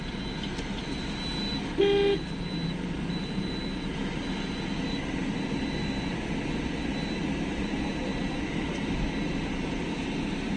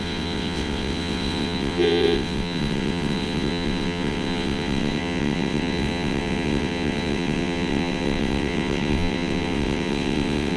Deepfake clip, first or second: second